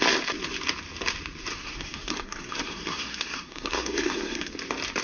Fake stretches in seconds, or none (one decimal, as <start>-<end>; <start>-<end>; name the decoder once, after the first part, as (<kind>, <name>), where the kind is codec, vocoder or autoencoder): 1.5-4.5 (codec, SNAC)